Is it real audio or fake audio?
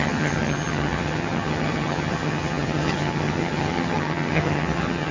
fake